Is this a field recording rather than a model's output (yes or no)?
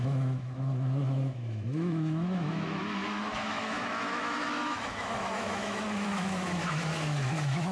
no